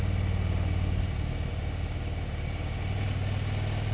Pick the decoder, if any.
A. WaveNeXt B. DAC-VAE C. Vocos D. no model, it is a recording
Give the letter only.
D